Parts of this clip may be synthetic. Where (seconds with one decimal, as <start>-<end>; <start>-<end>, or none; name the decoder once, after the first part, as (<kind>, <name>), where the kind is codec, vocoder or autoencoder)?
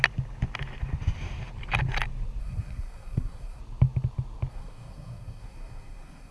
2.4-3.6 (codec, SNAC); 4.5-6.3